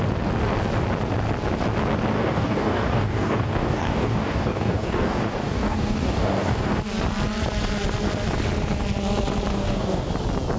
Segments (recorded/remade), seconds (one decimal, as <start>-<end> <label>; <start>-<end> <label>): 0.0-2.1 recorded; 2.1-6.7 remade; 6.7-9.5 recorded; 9.5-10.1 remade; 10.1-10.6 recorded